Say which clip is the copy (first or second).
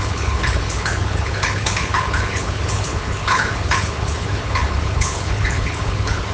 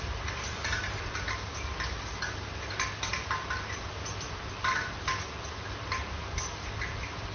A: first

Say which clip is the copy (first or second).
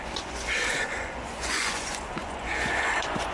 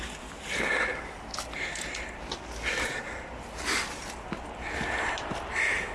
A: first